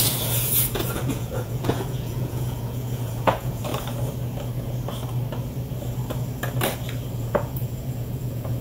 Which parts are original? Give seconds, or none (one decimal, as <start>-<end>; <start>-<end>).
3.7-7.1